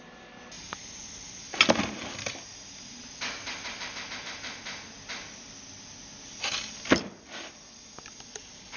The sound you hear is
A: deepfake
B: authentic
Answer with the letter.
B